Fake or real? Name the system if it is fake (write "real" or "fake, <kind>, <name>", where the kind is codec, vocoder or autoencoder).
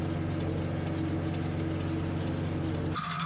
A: real